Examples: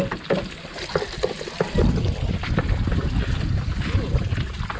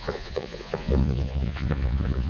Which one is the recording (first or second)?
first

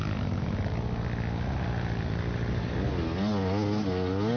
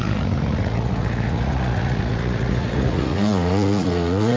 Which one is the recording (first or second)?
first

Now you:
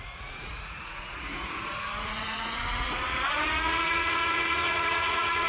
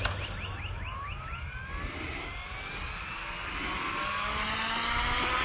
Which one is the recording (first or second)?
second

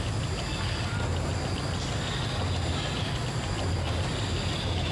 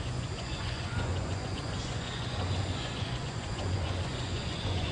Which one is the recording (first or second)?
first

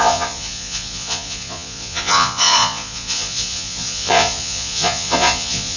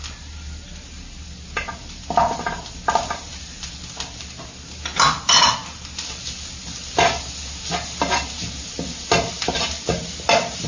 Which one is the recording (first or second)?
second